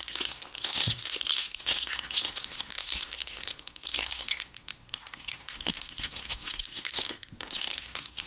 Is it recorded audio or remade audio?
remade